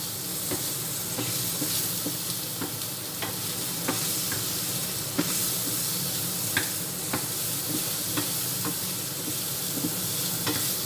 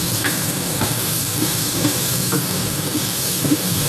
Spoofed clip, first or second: second